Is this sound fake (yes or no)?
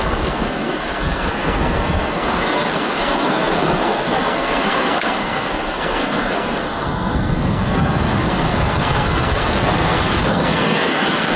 yes